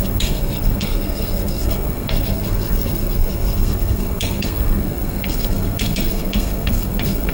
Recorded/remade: remade